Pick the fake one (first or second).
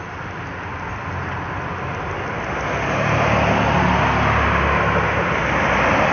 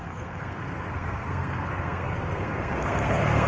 second